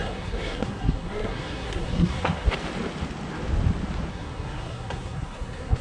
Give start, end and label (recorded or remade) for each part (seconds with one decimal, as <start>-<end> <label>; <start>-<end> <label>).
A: 0.0-2.5 remade; 2.5-4.1 recorded; 4.1-5.8 remade